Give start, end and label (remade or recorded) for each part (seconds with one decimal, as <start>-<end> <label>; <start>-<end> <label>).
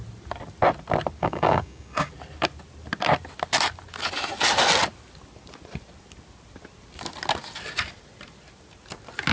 0.0-1.2 recorded; 1.2-2.1 remade; 2.1-9.3 recorded